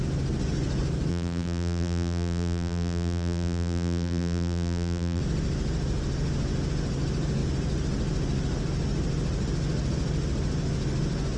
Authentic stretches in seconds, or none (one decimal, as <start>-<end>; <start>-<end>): 0.0-1.1; 5.2-11.4